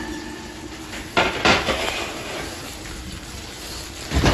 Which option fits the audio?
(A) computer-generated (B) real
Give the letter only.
A